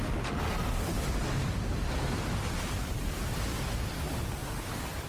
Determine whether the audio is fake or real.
real